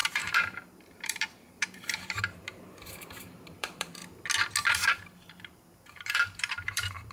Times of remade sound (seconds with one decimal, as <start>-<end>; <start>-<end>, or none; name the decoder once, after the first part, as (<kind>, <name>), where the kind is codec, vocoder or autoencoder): 0.0-4.0 (vocoder, BigVGAN v2); 4.7-7.1